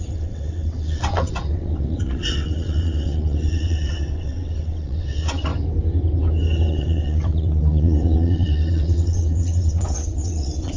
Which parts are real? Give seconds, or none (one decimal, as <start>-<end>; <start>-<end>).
5.5-6.7